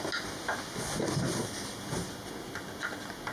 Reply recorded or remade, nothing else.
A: recorded